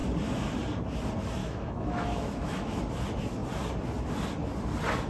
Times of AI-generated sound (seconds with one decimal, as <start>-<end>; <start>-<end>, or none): 1.4-2.8